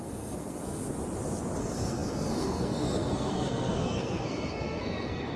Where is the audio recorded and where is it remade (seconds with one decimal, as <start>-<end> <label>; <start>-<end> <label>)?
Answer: 0.0-0.8 remade; 0.8-1.6 recorded; 1.6-5.4 remade